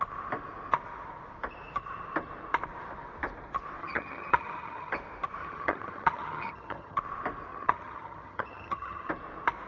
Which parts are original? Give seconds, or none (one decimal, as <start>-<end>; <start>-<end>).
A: 0.0-3.8; 4.9-5.4; 7.0-7.5; 9.1-9.7